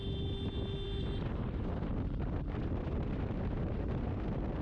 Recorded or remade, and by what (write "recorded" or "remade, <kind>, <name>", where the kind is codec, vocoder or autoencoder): recorded